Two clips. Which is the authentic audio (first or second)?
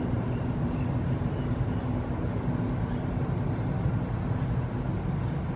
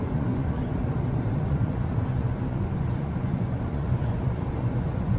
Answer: first